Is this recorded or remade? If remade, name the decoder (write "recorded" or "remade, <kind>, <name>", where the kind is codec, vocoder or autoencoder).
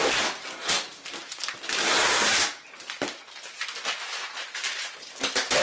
remade, vocoder, BigVGAN v2